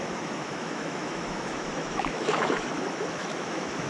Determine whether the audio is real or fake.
fake